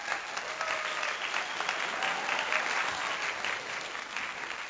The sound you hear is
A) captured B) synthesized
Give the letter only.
A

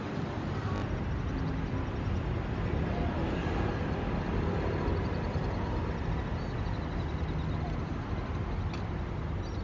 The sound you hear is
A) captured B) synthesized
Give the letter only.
A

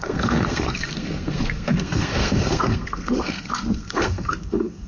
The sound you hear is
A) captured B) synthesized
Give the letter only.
B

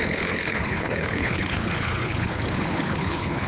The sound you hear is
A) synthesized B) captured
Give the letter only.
A